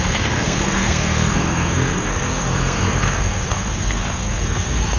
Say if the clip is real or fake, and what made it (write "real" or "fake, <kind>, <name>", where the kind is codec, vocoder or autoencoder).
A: fake, codec, SNAC